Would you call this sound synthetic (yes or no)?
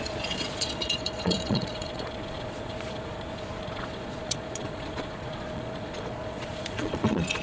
yes